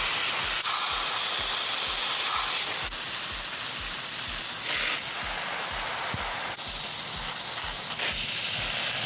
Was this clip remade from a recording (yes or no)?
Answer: no